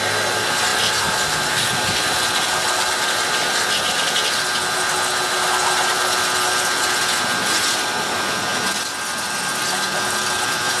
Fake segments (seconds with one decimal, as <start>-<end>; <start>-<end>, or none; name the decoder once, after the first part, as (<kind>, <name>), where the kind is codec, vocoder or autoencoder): 0.7-3.1 (vocoder, BigVGAN v2)